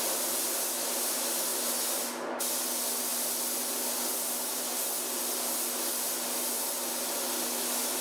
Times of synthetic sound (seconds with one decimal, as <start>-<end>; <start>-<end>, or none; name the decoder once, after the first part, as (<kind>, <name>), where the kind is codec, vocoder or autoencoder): none